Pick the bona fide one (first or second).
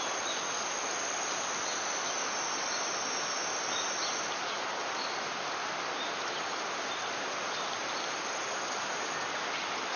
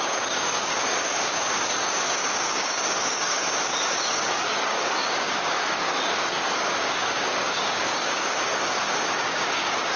first